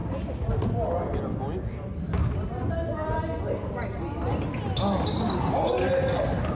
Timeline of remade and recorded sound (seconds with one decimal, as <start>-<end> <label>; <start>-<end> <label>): 0.0-6.5 recorded